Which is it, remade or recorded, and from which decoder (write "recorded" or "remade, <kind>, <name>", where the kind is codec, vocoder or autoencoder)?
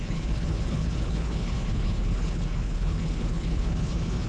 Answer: remade, codec, HILCodec